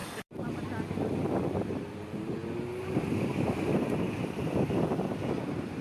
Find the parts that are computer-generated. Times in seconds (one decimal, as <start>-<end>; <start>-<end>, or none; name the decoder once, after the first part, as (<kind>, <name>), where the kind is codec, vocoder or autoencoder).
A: 0.0-0.5 (vocoder, BigVGAN v2)